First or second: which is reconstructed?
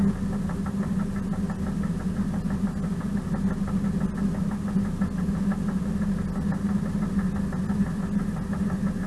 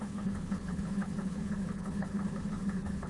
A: second